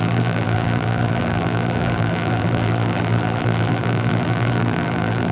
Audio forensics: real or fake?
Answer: fake